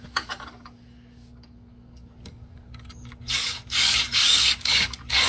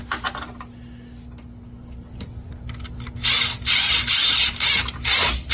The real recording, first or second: second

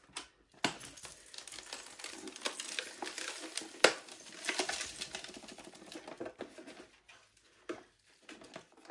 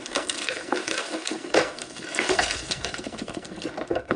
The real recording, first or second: first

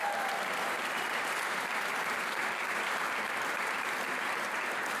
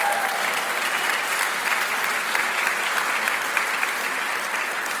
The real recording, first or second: second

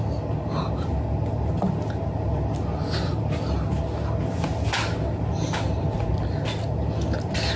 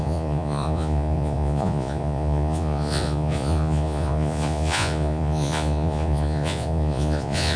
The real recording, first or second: first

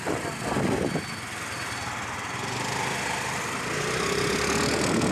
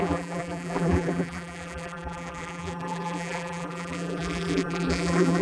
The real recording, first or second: first